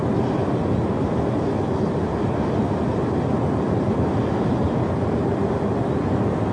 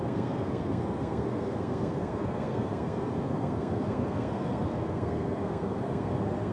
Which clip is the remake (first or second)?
second